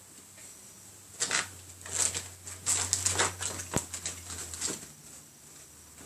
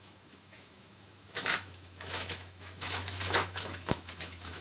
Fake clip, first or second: second